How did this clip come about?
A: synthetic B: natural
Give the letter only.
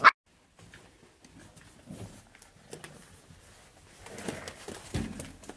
B